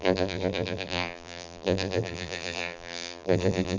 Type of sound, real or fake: fake